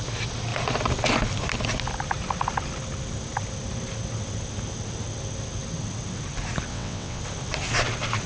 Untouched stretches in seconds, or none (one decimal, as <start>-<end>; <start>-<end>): 0.0-6.7; 7.2-8.3

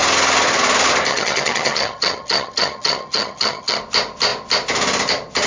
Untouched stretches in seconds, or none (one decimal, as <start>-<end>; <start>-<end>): 0.0-1.1; 3.8-5.5